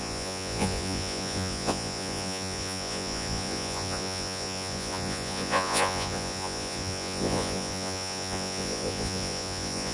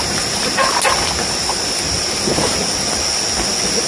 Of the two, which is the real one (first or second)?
second